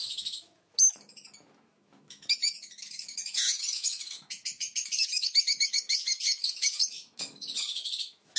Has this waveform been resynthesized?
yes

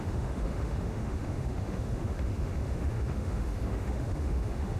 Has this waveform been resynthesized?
yes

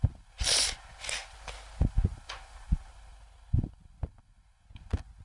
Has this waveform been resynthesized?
no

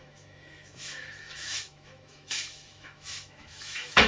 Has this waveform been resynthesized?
yes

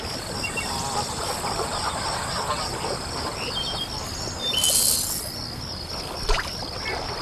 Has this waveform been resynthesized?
no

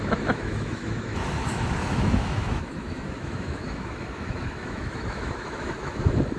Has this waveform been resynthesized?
yes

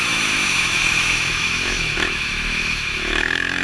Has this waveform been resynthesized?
yes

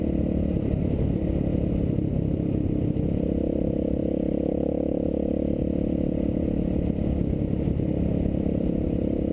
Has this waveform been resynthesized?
no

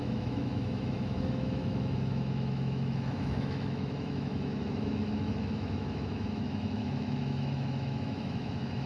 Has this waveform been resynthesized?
yes